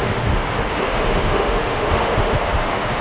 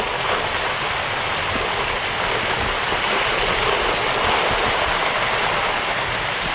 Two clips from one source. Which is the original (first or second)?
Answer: second